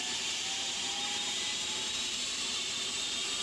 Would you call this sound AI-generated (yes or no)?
yes